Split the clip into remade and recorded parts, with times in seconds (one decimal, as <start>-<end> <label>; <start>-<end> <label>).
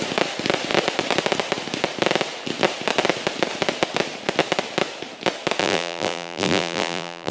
0.0-5.6 recorded; 5.6-7.3 remade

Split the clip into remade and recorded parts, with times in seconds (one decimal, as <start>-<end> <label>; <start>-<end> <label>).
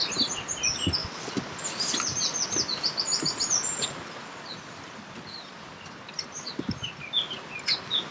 0.0-1.0 recorded; 1.0-5.9 remade; 5.9-8.1 recorded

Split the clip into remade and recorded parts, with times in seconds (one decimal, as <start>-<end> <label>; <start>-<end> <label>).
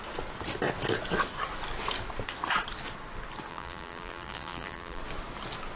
0.0-3.5 recorded; 3.5-5.0 remade; 5.0-5.8 recorded